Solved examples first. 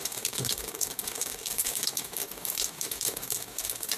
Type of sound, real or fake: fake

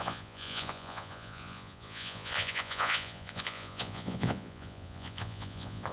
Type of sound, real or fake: fake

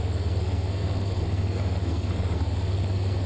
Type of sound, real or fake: fake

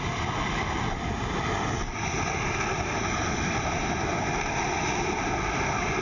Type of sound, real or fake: real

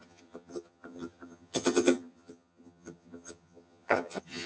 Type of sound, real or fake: fake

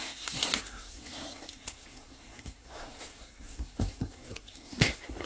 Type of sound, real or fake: fake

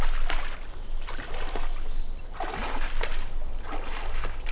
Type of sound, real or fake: real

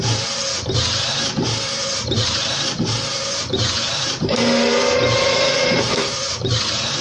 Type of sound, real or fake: fake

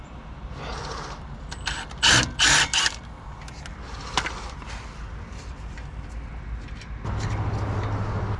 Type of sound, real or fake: real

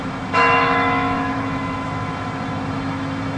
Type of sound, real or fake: fake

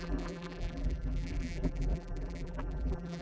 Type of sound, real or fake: fake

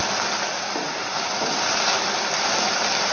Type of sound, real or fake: real